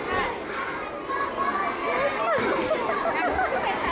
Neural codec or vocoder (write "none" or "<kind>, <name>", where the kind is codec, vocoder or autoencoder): none